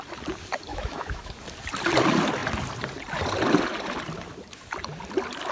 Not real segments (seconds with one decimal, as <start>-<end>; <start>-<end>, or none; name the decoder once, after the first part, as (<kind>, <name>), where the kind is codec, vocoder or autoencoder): 0.7-1.3 (autoencoder, DAC-VAE)